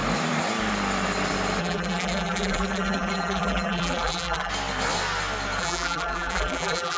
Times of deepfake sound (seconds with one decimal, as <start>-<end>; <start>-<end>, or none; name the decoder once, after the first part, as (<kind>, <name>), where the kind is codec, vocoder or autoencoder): 1.6-4.5 (vocoder, BigVGAN v2); 5.6-7.0